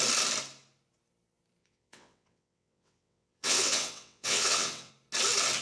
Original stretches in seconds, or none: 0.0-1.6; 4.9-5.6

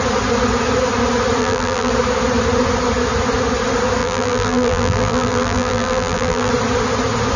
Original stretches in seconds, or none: 0.0-1.4; 1.9-4.0; 6.5-7.4

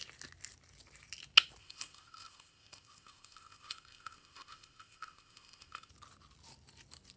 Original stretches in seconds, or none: 0.0-1.6; 5.9-7.2

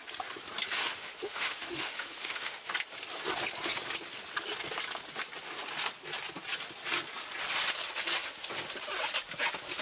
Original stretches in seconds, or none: 0.0-0.8; 2.6-9.8

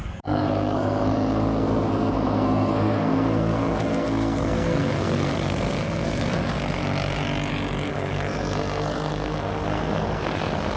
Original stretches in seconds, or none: 6.8-7.9

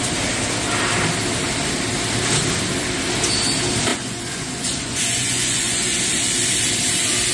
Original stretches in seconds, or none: 0.0-3.9; 6.0-7.3

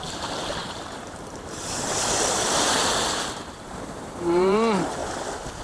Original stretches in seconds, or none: 5.0-5.6